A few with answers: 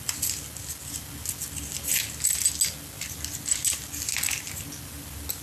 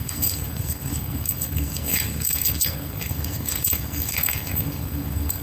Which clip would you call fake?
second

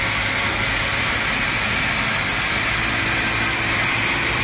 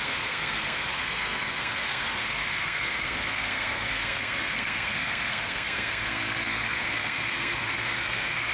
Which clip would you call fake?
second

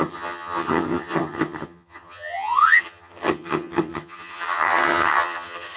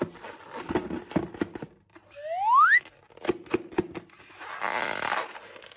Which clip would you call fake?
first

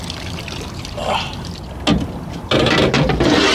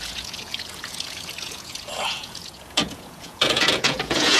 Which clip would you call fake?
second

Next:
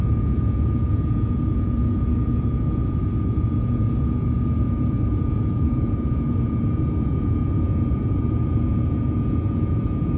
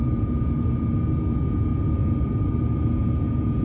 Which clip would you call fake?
first